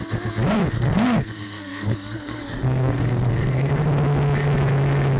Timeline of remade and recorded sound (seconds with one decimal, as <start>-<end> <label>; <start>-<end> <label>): 0.0-0.6 recorded; 0.6-3.7 remade; 3.7-5.2 recorded